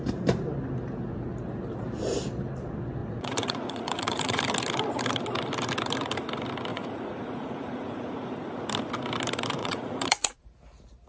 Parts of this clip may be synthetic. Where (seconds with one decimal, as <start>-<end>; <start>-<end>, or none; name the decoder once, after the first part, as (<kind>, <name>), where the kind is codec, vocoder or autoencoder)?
3.0-4.4 (vocoder, Vocos); 6.7-8.5; 9.6-10.5